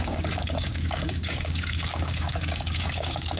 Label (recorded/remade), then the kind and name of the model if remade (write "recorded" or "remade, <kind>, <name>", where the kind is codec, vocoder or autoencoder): remade, codec, DAC